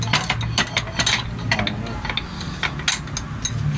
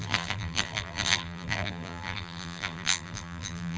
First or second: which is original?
first